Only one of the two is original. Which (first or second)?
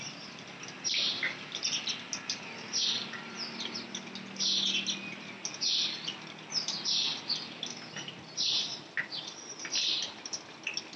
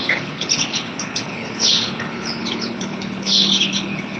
first